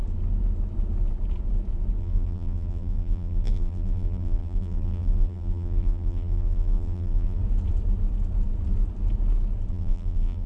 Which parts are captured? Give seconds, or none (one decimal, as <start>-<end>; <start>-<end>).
0.0-2.0; 7.4-9.7